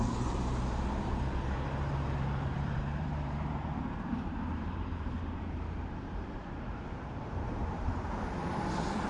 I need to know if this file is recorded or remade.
remade